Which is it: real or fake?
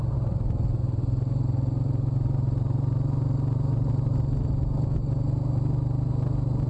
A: real